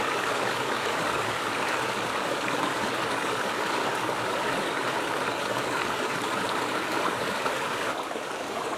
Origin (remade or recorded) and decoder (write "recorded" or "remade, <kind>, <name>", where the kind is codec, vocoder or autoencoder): remade, codec, DAC